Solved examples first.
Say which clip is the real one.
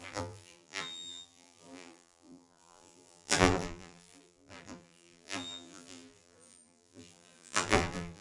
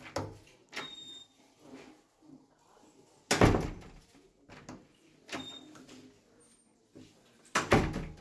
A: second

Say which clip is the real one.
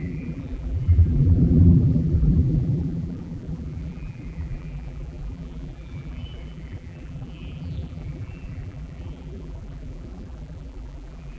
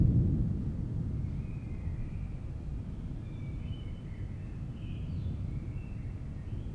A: second